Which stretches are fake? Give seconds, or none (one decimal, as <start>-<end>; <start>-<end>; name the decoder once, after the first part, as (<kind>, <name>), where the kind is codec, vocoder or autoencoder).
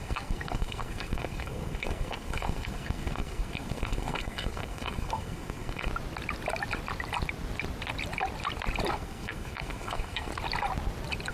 0.0-5.9 (codec, SNAC); 8.9-10.3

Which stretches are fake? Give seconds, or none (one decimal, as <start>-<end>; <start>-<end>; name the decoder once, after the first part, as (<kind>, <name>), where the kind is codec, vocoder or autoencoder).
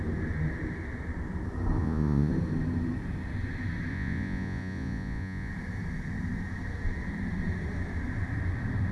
1.8-2.3 (vocoder, Vocos); 3.9-5.5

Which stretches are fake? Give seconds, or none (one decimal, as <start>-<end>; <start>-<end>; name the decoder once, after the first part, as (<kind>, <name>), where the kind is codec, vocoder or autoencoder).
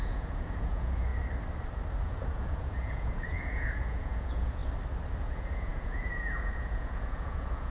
0.0-1.1 (vocoder, Vocos); 2.0-4.6; 5.2-7.7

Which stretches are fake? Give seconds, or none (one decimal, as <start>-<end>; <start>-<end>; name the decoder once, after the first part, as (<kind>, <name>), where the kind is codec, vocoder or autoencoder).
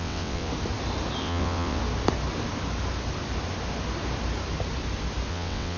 0.0-0.5 (vocoder, WaveNeXt); 1.2-1.8; 5.3-5.8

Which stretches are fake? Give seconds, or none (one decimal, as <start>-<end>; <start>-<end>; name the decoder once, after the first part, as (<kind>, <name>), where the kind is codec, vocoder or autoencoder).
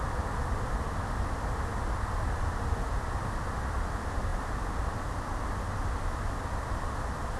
none